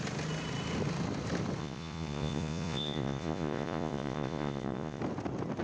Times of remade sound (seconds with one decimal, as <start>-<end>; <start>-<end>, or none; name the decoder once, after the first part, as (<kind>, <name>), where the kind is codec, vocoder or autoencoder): 1.6-5.0 (vocoder, Vocos)